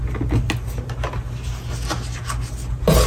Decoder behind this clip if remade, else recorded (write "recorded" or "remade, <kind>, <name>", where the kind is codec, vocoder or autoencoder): recorded